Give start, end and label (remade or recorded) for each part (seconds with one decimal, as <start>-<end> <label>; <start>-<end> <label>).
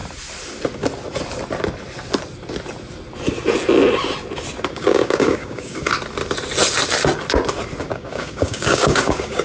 0.0-4.7 recorded; 4.7-5.9 remade; 5.9-7.8 recorded; 7.8-9.4 remade